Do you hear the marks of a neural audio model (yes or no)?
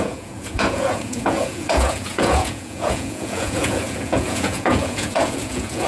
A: yes